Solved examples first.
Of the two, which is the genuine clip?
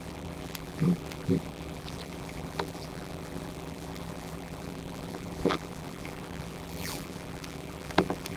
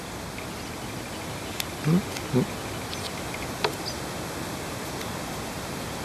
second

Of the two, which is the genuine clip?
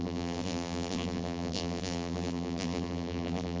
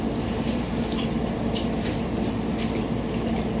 second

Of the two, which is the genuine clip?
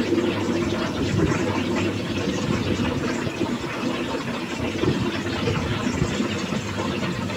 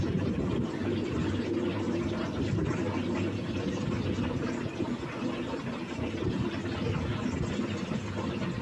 second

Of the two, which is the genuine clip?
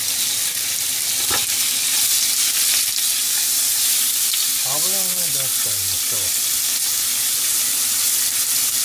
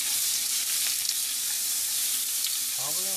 first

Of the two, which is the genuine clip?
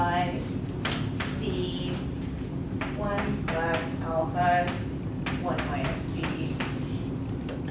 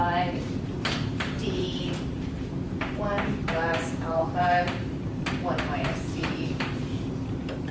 first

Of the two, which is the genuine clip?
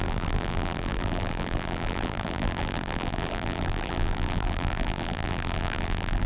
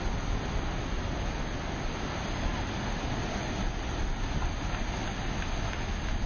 second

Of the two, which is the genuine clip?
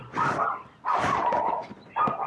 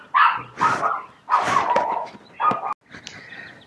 second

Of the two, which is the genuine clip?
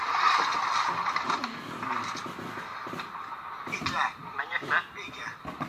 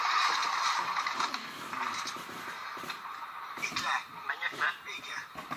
first